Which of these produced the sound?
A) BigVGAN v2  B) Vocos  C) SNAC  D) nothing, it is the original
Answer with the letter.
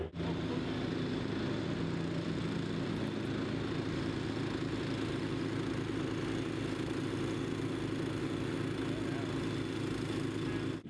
D